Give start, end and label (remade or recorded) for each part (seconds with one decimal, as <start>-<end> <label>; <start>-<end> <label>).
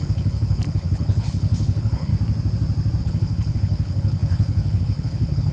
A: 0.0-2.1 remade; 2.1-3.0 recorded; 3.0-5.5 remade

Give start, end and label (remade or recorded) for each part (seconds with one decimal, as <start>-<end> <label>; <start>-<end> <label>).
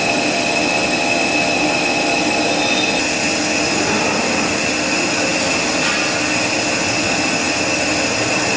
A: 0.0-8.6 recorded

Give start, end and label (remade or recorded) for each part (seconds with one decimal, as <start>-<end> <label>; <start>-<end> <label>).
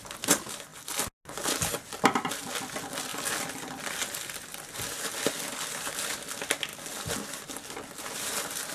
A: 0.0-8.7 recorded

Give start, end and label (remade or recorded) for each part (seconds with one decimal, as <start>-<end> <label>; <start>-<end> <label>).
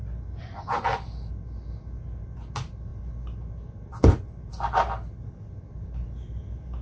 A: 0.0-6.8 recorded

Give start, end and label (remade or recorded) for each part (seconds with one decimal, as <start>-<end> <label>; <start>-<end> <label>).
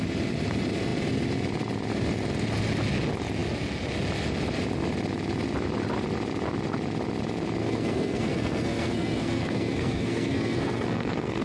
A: 0.0-7.6 recorded; 7.6-11.4 remade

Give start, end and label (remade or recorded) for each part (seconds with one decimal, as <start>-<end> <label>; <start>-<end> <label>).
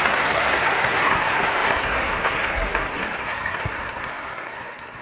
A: 0.0-5.0 remade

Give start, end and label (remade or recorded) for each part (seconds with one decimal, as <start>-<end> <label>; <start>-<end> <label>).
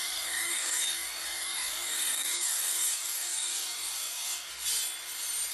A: 0.0-4.5 remade; 4.5-5.5 recorded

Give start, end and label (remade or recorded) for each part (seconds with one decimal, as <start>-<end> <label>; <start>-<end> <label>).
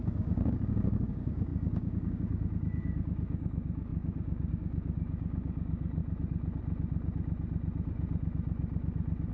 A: 0.0-6.0 remade; 6.0-9.3 recorded